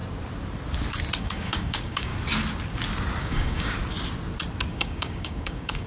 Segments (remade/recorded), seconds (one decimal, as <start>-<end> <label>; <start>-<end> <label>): 0.0-1.2 recorded; 1.2-2.1 remade; 2.1-3.2 recorded; 3.2-3.8 remade; 3.8-4.7 recorded; 4.7-5.9 remade